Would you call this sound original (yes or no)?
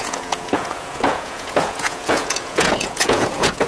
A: no